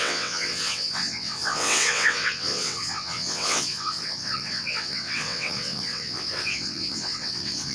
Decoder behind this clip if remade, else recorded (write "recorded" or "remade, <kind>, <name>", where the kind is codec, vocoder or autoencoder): remade, vocoder, WaveNeXt